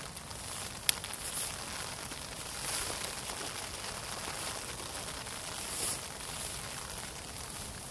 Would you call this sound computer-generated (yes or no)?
no